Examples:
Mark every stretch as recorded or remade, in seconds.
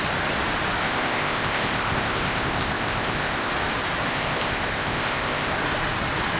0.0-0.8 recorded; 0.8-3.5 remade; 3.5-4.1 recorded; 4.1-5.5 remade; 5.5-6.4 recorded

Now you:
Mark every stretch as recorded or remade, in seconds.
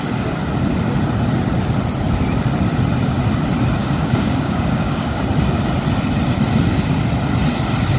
0.0-3.8 recorded; 3.8-5.2 remade; 5.2-8.0 recorded